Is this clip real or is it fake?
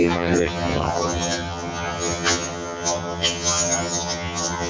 fake